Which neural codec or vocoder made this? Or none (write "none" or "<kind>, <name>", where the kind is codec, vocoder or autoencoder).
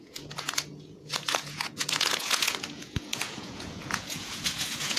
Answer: vocoder, Vocos